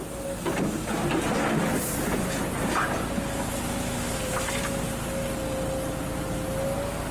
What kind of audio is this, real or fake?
real